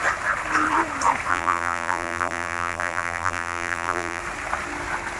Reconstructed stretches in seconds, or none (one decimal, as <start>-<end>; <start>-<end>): 1.3-4.2